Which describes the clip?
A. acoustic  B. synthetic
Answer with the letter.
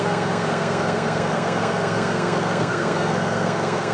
B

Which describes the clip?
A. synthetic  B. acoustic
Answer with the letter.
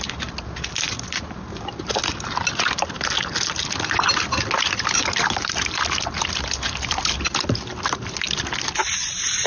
B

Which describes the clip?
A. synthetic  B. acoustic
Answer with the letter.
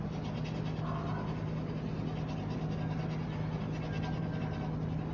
B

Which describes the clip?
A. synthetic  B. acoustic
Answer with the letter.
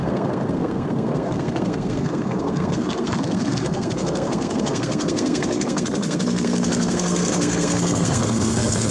A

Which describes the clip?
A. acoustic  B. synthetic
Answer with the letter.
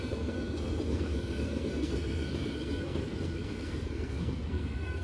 B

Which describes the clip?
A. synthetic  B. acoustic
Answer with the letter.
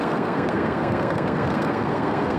A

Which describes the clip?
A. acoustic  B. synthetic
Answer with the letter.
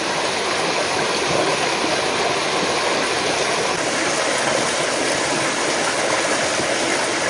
A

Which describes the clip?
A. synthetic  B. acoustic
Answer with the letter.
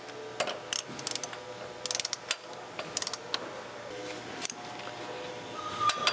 B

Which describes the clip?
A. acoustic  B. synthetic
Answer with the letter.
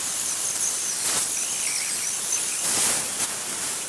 A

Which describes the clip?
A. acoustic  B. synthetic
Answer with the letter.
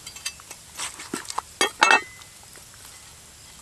A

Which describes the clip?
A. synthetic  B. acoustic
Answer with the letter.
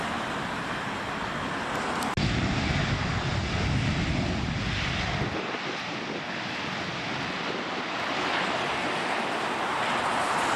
B